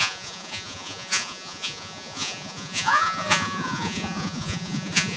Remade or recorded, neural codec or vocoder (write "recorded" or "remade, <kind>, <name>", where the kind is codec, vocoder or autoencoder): remade, vocoder, Vocos